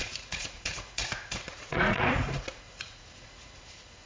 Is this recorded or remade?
remade